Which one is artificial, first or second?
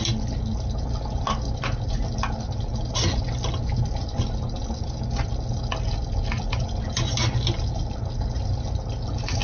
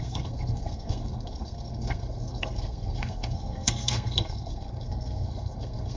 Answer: second